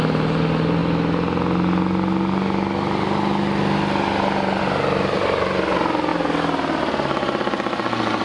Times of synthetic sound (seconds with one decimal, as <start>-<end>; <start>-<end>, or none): none